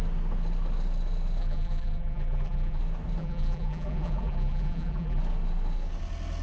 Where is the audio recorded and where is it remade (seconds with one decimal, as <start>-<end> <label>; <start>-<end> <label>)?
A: 0.0-1.4 recorded; 1.4-2.8 remade; 2.8-3.2 recorded; 3.2-5.2 remade; 5.2-6.4 recorded